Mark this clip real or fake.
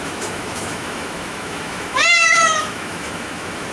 fake